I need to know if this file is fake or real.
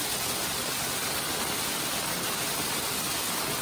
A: real